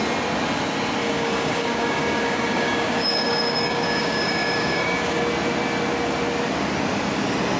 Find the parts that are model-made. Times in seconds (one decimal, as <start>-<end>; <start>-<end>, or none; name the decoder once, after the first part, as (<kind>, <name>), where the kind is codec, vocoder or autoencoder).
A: 1.0-5.2 (codec, DAC)